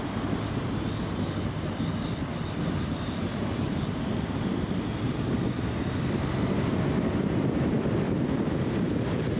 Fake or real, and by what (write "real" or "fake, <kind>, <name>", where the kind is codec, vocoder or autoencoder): fake, vocoder, BigVGAN v2